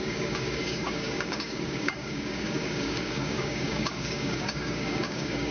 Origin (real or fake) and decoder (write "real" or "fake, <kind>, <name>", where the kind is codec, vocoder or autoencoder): fake, codec, DAC